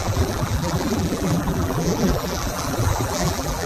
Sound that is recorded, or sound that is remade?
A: remade